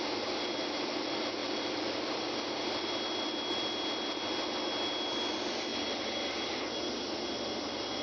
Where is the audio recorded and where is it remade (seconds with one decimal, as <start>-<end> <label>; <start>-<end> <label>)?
0.0-1.4 recorded; 1.4-2.2 remade; 2.2-8.0 recorded